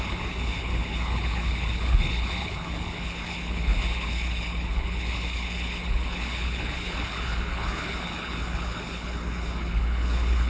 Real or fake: fake